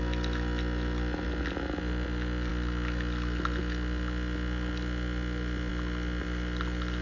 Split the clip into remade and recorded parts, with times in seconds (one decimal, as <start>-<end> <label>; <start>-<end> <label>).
0.0-7.0 recorded